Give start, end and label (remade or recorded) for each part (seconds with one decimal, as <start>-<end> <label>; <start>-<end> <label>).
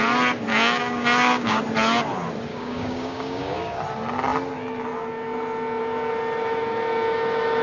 0.0-0.5 recorded; 0.5-1.6 remade; 1.6-2.5 recorded; 2.5-3.8 remade; 3.8-7.6 recorded